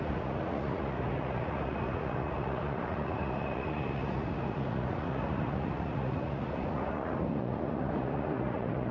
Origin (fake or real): fake